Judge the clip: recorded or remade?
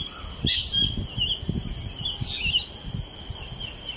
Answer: recorded